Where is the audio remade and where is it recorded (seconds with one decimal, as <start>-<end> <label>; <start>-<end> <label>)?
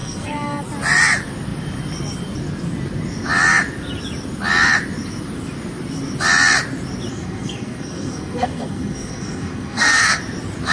0.0-0.6 remade; 0.6-7.1 recorded; 7.1-10.2 remade; 10.2-10.7 recorded